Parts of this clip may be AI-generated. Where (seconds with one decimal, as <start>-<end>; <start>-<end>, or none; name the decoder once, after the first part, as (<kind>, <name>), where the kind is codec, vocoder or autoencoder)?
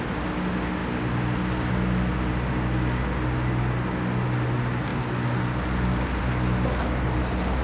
none